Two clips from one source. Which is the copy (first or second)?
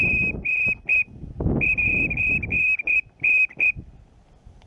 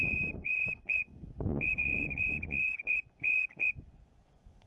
second